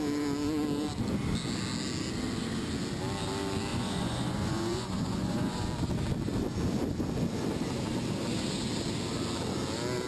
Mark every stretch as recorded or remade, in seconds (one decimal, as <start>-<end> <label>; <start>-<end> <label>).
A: 0.0-3.7 recorded; 3.7-5.7 remade; 5.7-10.1 recorded